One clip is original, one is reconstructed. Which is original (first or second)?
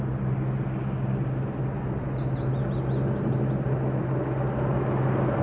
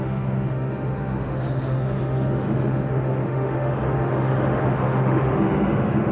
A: first